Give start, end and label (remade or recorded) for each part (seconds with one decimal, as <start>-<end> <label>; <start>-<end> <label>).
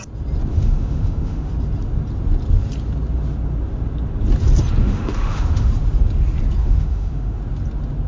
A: 0.0-0.5 recorded; 0.5-1.5 remade; 1.5-4.8 recorded; 4.8-5.7 remade; 5.7-6.6 recorded; 6.6-7.4 remade; 7.4-8.1 recorded